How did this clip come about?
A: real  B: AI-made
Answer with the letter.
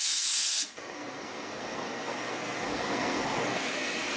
B